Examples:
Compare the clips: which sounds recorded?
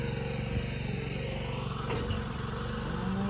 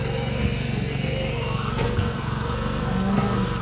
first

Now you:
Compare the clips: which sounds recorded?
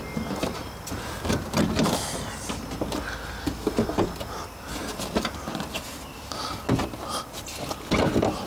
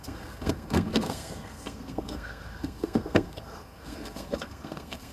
first